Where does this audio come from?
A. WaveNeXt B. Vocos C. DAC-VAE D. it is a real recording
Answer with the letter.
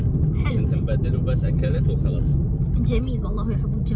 D